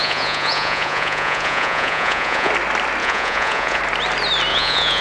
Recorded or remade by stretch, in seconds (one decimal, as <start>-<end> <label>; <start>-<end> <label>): 0.0-2.5 remade; 2.5-3.0 recorded; 3.0-3.8 remade; 3.8-4.5 recorded; 4.5-5.0 remade